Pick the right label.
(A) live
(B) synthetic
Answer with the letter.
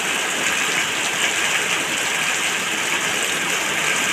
A